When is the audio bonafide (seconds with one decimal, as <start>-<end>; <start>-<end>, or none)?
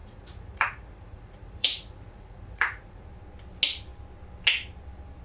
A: 3.1-5.2